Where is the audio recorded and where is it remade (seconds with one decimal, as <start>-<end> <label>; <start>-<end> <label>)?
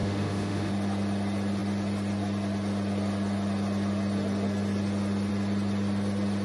0.0-0.7 remade; 0.7-6.4 recorded